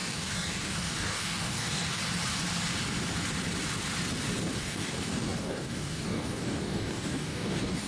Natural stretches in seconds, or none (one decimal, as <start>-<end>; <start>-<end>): 2.0-4.6